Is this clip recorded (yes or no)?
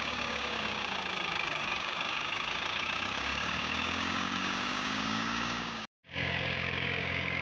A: no